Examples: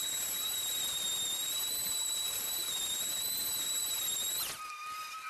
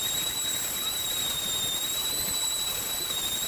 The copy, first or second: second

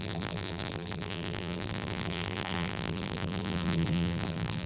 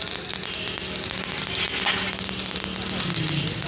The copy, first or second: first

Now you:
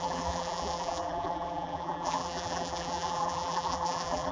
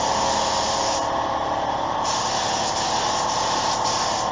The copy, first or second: first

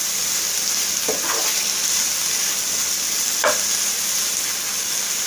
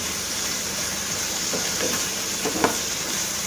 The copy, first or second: second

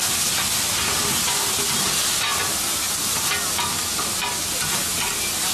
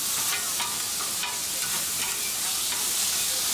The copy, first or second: second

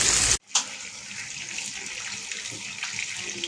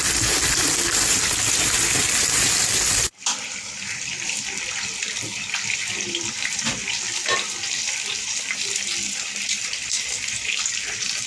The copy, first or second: second